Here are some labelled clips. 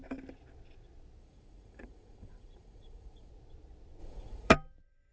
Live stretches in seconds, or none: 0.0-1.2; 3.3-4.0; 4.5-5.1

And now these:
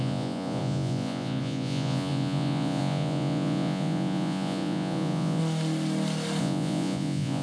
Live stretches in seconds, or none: 5.4-6.4

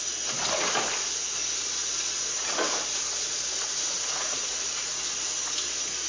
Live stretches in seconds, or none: 0.0-3.1; 4.9-6.1

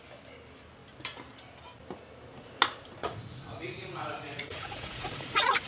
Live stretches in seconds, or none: 0.0-3.0

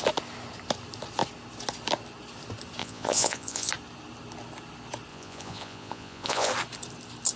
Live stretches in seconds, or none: 0.0-2.8; 3.7-5.1; 6.5-7.4

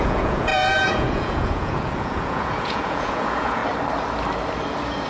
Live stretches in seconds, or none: 3.6-5.1

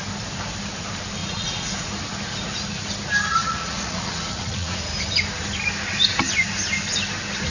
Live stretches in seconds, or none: 0.0-1.2; 1.9-3.4; 4.8-7.5